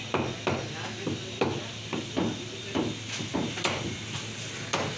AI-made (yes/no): no